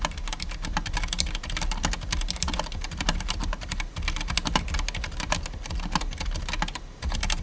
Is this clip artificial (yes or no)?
no